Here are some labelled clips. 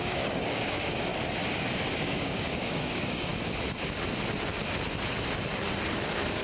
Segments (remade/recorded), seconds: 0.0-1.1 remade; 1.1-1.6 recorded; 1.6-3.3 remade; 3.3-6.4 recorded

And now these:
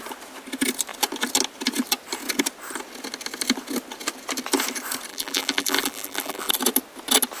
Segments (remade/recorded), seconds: 0.0-5.1 recorded; 5.1-6.5 remade; 6.5-7.4 recorded

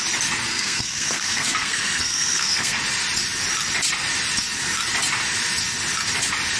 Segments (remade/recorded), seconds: 0.0-0.5 recorded; 0.5-2.8 remade; 2.8-6.6 recorded

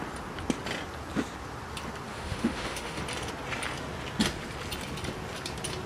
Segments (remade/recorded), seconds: 0.0-2.1 recorded; 2.1-3.0 remade; 3.0-5.9 recorded

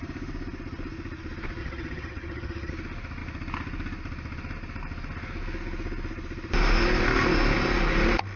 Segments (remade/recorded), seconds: 0.0-1.6 recorded; 1.6-2.7 remade; 2.7-8.4 recorded

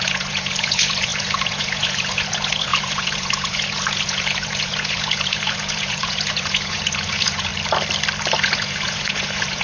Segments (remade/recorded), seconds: 0.0-7.5 remade; 7.5-8.4 recorded; 8.4-9.6 remade

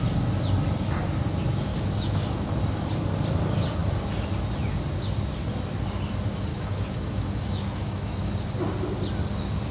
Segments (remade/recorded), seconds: 0.0-1.7 recorded; 1.7-2.5 remade; 2.5-6.5 recorded; 6.5-8.3 remade; 8.3-9.7 recorded

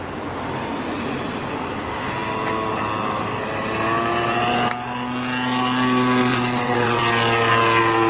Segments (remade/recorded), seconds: 0.0-6.2 recorded; 6.2-7.0 remade; 7.0-8.1 recorded